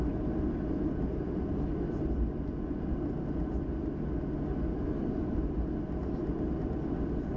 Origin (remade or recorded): recorded